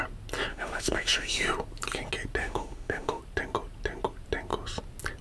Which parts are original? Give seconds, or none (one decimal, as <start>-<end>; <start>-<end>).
0.0-0.5; 1.4-2.4; 3.2-5.2